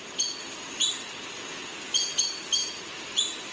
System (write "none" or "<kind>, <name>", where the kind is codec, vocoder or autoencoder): none